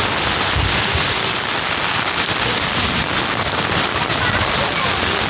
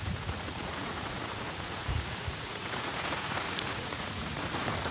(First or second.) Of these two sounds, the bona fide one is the first